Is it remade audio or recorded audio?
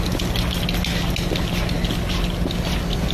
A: recorded